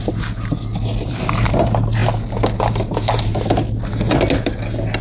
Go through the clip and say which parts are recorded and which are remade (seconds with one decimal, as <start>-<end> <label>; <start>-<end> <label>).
0.0-5.0 recorded

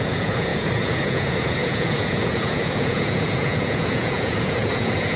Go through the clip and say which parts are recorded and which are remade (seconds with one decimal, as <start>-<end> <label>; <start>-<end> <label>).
0.0-5.2 remade

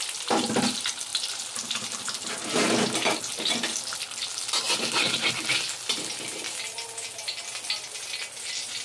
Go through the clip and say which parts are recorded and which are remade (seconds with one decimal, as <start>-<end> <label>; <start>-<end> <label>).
0.0-8.8 recorded

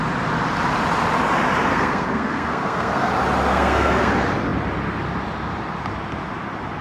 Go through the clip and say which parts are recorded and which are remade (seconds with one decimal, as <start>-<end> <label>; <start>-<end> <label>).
0.0-1.7 recorded; 1.7-3.1 remade; 3.1-3.5 recorded; 3.5-4.1 remade; 4.1-6.8 recorded

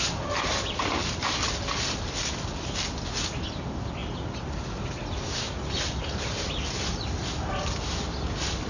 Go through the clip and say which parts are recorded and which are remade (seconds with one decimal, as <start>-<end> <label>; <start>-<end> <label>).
0.0-8.7 recorded

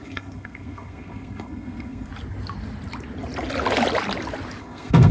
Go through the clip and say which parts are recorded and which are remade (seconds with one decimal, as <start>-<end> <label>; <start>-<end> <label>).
0.0-2.1 remade; 2.1-4.6 recorded; 4.6-5.1 remade

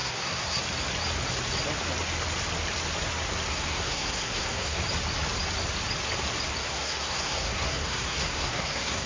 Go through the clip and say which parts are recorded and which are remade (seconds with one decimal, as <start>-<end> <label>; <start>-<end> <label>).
0.0-0.6 remade; 0.6-3.5 recorded; 3.5-4.8 remade; 4.8-6.7 recorded; 6.7-9.1 remade